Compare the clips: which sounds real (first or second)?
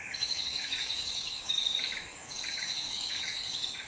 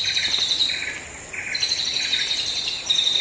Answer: second